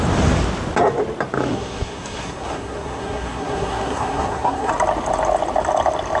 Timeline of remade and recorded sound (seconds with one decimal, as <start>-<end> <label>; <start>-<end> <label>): 0.0-1.5 recorded; 1.5-4.7 remade; 4.7-6.2 recorded